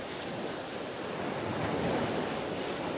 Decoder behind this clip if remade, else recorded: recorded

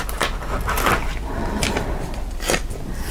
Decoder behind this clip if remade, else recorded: recorded